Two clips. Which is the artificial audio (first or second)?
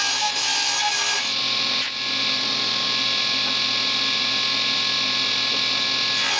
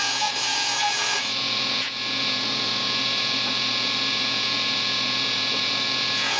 second